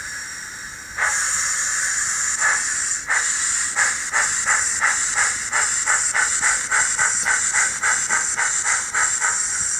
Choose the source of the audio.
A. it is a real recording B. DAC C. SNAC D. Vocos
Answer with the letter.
A